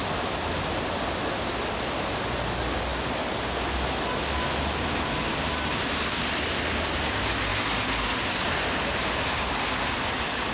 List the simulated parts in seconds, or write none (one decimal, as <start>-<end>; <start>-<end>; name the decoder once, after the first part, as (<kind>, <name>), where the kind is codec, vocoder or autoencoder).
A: none